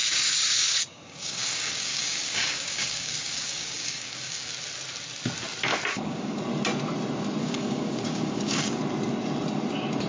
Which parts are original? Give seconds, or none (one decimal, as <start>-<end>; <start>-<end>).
4.5-5.9; 6.4-7.4; 8.8-10.1